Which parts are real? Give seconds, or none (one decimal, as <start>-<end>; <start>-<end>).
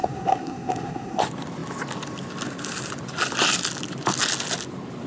1.2-5.1